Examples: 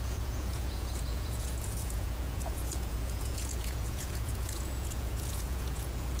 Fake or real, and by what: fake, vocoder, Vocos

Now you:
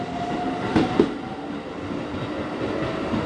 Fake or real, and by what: real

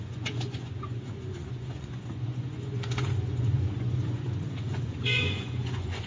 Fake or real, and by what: fake, vocoder, Vocos